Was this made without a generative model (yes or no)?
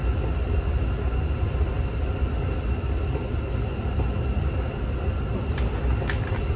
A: yes